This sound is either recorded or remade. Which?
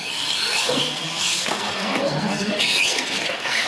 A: remade